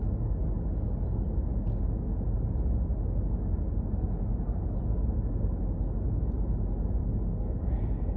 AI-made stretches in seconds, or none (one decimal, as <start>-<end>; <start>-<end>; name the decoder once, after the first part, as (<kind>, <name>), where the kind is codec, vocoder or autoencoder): 7.0-7.6 (codec, SNAC)